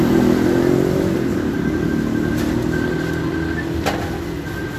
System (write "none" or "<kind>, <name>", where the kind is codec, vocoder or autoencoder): none